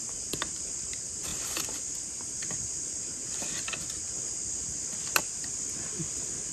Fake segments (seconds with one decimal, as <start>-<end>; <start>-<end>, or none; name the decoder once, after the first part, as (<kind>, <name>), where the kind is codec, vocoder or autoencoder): none